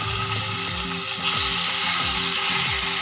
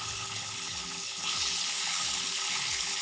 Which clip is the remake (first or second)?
second